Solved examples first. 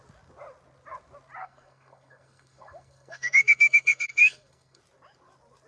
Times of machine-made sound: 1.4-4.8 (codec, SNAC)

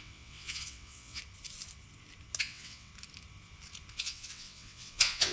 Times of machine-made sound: 0.0-1.2 (vocoder, WaveNeXt); 2.4-2.9; 3.9-5.3

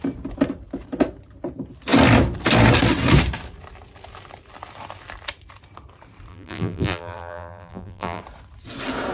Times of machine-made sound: 6.3-8.2 (vocoder, BigVGAN v2)

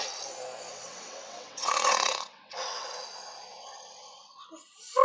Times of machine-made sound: 0.7-3.0 (vocoder, WaveNeXt); 3.5-4.5

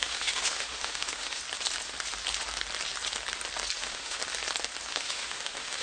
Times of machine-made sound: 0.0-1.4 (autoencoder, DAC-VAE); 3.8-4.2; 4.9-5.8

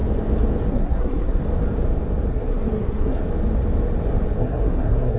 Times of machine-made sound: 0.7-1.4 (codec, SNAC); 2.3-3.2; 4.4-5.2

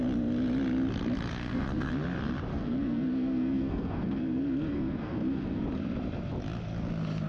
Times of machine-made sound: 1.3-1.9 (codec, SNAC); 2.5-5.6